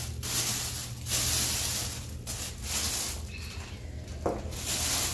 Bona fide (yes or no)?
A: yes